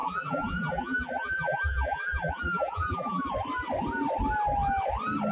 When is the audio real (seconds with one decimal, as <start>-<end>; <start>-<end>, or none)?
3.2-5.3